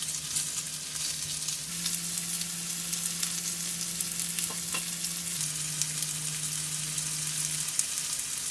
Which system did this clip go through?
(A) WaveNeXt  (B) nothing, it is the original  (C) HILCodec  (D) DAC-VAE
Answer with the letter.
B